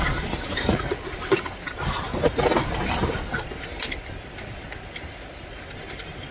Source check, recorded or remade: recorded